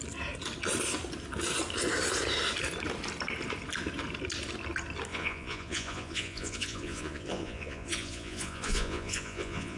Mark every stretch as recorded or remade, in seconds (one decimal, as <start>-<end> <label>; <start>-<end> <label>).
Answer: 0.0-5.1 recorded; 5.1-9.8 remade